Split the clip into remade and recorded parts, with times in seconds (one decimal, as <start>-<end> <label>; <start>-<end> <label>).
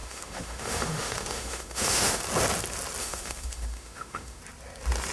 0.0-2.2 remade; 2.2-3.0 recorded; 3.0-4.4 remade; 4.4-5.1 recorded